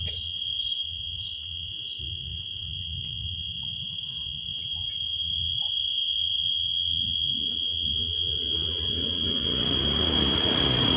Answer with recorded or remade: remade